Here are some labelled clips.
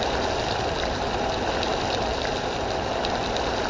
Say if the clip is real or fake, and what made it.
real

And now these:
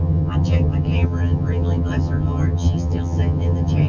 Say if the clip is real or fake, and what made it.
fake, vocoder, HiFi-GAN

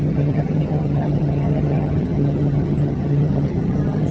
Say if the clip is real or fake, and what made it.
fake, vocoder, HiFi-GAN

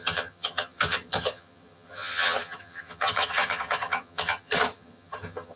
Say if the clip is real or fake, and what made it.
fake, vocoder, HiFi-GAN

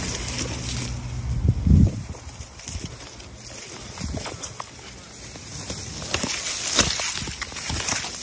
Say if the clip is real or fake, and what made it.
real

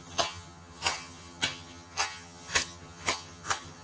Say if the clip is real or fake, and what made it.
fake, vocoder, HiFi-GAN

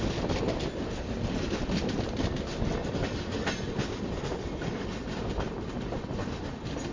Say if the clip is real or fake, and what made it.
real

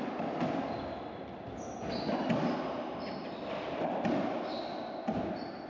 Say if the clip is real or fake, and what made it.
real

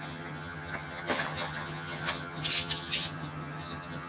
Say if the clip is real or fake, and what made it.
fake, vocoder, HiFi-GAN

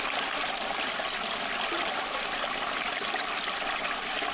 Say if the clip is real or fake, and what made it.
real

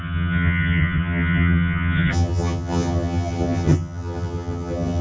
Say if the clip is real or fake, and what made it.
fake, vocoder, HiFi-GAN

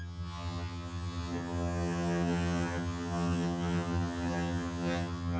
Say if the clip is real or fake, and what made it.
fake, vocoder, HiFi-GAN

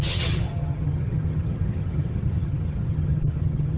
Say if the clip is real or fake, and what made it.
fake, vocoder, HiFi-GAN